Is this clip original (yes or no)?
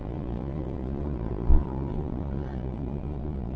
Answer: no